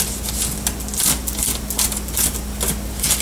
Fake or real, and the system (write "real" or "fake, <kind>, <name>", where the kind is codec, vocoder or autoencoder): real